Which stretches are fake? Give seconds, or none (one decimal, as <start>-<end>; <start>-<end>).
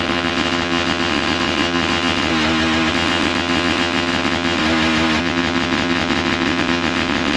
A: 0.0-2.3; 2.9-4.6; 5.2-7.4